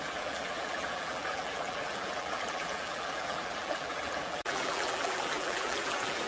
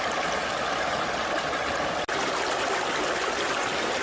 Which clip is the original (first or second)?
second